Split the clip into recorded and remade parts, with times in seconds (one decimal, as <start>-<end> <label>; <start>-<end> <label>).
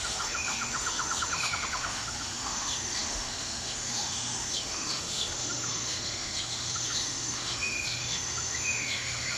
0.0-9.4 remade